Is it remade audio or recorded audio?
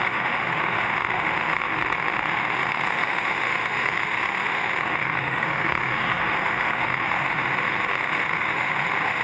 remade